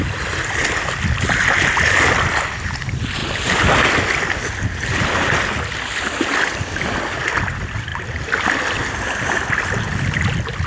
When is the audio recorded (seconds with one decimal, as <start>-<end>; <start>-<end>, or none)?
0.0-7.9; 8.9-10.7